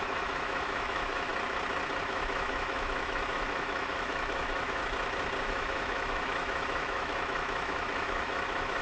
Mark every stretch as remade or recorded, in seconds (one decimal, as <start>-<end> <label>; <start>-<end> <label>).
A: 0.0-1.3 remade; 1.3-2.0 recorded; 2.0-4.8 remade; 4.8-5.4 recorded; 5.4-8.8 remade